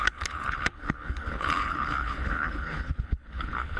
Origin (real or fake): fake